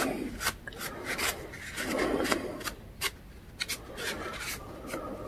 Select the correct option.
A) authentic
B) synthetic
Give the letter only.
A